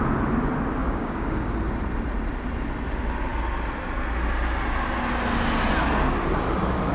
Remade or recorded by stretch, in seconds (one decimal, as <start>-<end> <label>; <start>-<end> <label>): 0.0-0.8 recorded; 0.8-1.5 remade; 1.5-6.9 recorded